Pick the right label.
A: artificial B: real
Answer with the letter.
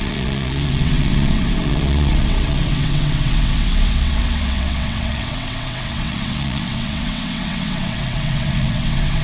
A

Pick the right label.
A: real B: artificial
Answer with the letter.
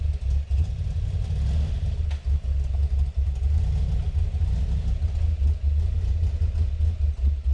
A